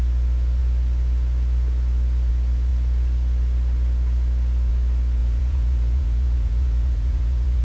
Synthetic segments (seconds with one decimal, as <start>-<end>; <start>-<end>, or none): 5.2-7.6

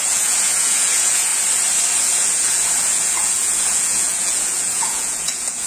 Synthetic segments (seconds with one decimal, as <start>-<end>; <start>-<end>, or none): 0.0-1.3; 2.0-5.7

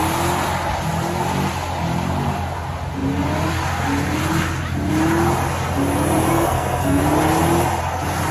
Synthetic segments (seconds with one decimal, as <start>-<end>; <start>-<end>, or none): 6.3-7.0

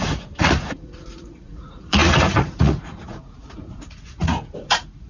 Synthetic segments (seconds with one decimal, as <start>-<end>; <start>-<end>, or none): 0.0-5.1

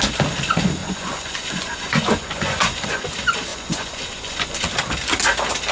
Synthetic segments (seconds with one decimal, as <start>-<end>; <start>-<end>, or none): 0.8-3.1; 3.5-4.7

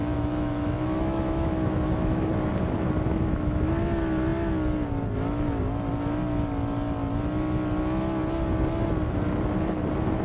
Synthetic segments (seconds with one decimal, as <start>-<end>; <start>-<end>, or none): 0.0-2.3; 3.1-3.7